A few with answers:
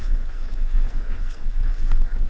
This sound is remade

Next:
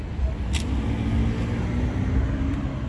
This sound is recorded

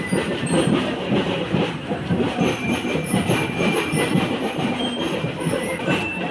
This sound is remade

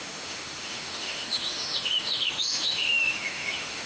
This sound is remade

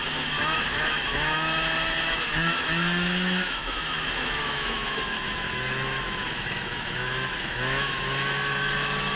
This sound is remade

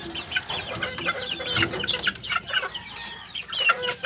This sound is recorded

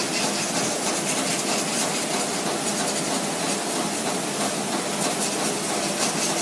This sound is recorded